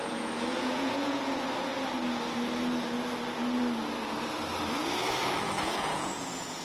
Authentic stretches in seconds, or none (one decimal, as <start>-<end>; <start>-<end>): 1.7-5.6